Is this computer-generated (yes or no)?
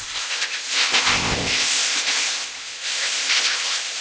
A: yes